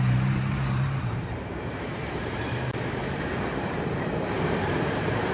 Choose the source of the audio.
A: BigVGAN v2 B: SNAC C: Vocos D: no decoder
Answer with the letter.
A